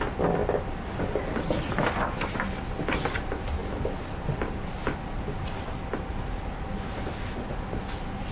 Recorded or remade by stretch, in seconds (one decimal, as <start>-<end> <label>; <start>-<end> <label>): 0.0-8.3 recorded